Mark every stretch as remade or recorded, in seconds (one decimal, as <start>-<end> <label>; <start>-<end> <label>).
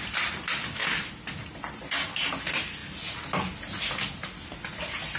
0.0-2.8 remade; 2.8-4.0 recorded; 4.0-5.2 remade